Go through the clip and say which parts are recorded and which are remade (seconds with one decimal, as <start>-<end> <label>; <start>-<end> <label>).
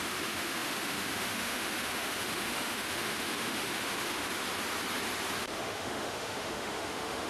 0.0-4.3 remade; 4.3-5.4 recorded; 5.4-7.3 remade